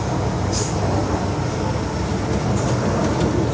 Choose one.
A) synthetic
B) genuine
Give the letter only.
B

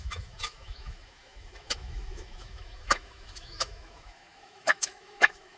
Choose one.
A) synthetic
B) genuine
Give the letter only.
A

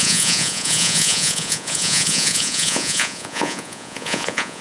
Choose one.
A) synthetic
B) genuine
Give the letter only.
A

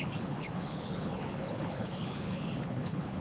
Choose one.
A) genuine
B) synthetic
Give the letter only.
B